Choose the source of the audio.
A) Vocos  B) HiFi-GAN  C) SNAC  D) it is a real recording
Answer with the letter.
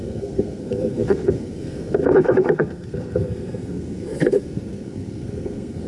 C